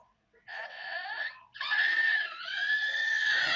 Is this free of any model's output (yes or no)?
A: no